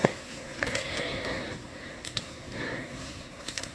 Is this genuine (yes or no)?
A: no